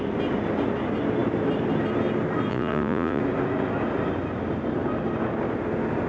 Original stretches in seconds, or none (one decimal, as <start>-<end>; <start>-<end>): 0.0-2.5; 3.2-6.1